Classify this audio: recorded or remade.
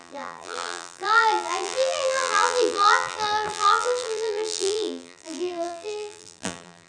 remade